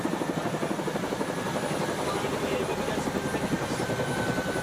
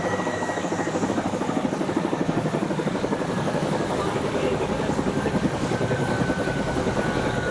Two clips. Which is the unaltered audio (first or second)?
first